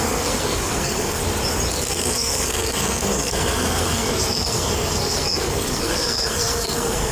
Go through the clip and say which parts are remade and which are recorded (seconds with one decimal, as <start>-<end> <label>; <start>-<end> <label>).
0.0-1.2 remade; 1.2-1.9 recorded; 1.9-7.1 remade